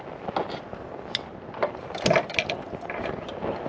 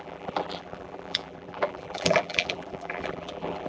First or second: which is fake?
second